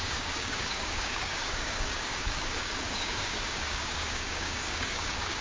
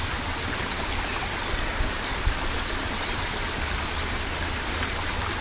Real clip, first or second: second